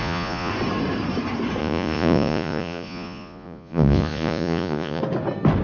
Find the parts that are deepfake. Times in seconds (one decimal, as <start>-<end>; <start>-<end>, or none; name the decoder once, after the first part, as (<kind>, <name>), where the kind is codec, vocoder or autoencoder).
0.0-0.5 (vocoder, Vocos); 1.6-5.0